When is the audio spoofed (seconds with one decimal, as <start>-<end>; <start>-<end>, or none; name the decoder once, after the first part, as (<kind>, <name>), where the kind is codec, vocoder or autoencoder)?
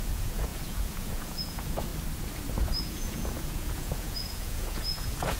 0.0-1.9 (vocoder, Vocos); 2.8-5.4